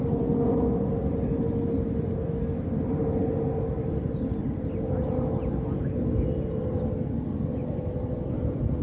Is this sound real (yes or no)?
yes